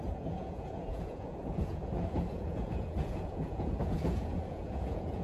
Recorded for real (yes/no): no